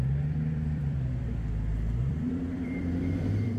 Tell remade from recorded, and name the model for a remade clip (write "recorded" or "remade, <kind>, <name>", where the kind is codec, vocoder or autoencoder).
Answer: remade, vocoder, BigVGAN v2